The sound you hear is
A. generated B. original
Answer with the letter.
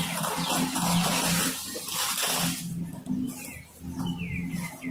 B